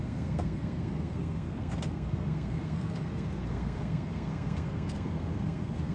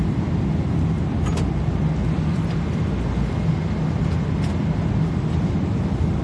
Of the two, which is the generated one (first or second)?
first